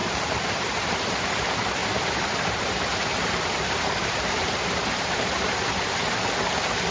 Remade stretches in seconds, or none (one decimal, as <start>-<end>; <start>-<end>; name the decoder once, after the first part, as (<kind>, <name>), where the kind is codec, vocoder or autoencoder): 0.0-1.3 (vocoder, BigVGAN v2); 1.8-5.9